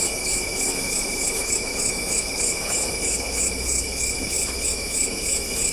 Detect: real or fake fake